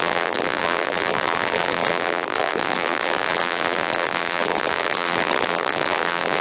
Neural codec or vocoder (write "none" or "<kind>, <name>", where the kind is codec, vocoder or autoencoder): vocoder, BigVGAN v2